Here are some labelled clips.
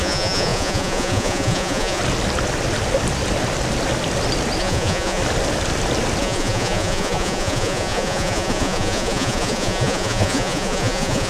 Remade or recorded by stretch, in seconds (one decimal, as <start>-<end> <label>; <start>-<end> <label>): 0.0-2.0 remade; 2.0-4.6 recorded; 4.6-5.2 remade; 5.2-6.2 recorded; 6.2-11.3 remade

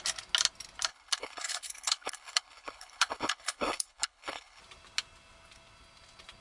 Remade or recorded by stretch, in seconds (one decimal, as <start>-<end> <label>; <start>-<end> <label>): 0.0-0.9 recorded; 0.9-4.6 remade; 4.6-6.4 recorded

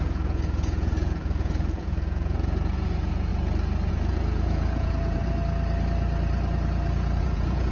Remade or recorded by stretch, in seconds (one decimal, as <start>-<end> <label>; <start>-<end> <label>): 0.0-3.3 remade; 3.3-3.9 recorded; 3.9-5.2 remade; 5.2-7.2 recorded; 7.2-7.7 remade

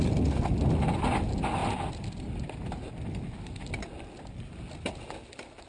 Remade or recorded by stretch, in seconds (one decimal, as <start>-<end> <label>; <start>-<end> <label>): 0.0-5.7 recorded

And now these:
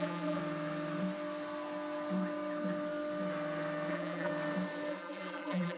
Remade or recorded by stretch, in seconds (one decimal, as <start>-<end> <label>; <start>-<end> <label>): 0.0-0.4 remade; 0.4-3.9 recorded; 3.9-4.3 remade; 4.3-4.9 recorded; 4.9-5.8 remade